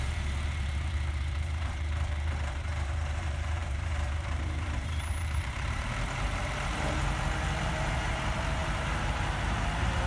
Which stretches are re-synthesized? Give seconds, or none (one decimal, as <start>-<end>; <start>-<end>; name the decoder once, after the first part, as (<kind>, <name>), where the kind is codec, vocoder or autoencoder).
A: 0.0-10.1 (vocoder, BigVGAN v2)